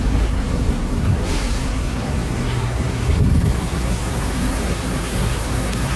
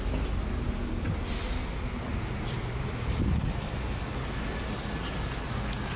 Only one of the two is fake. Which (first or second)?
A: first